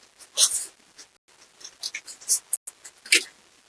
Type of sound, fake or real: real